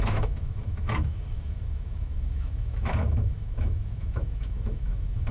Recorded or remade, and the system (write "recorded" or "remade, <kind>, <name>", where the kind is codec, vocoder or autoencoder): remade, autoencoder, DAC-VAE